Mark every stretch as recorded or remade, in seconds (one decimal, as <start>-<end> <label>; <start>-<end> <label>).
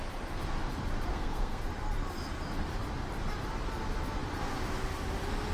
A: 0.0-1.1 recorded; 1.1-1.6 remade; 1.6-5.5 recorded